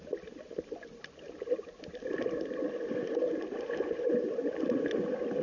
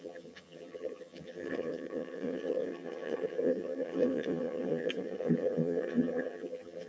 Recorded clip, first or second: first